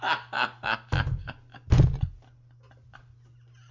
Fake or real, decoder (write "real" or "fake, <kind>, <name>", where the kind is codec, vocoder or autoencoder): real